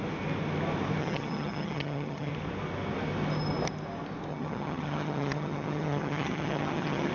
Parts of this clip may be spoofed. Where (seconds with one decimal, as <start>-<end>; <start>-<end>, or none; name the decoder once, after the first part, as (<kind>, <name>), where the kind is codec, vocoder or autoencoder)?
1.0-2.3 (vocoder, HiFi-GAN); 4.3-7.1